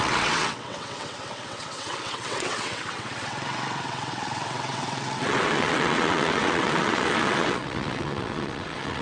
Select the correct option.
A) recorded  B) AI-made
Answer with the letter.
B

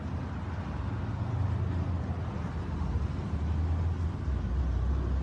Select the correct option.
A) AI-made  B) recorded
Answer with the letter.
B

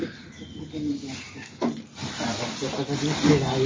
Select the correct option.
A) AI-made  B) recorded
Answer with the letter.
B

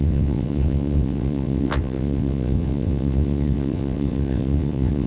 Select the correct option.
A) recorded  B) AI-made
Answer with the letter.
B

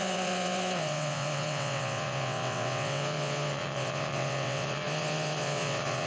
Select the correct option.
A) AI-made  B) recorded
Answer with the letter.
A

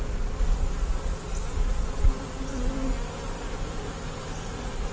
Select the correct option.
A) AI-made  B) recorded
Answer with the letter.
B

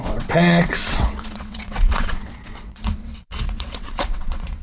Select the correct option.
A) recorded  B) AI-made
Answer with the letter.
B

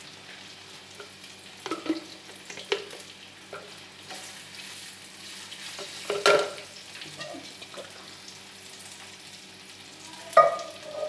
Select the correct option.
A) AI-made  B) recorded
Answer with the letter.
B